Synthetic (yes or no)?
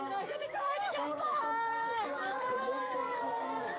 yes